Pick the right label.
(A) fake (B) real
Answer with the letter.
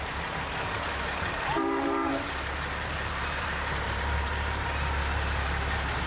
A